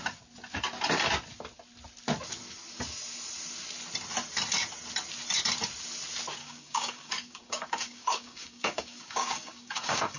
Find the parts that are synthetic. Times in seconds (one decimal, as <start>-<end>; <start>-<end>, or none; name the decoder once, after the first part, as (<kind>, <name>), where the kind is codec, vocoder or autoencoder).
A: 6.4-10.2 (codec, DAC)